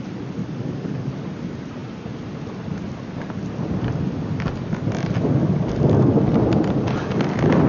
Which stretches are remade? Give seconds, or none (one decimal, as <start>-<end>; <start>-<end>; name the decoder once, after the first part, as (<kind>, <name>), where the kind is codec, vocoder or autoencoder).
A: 0.4-1.1 (codec, DAC); 5.4-6.1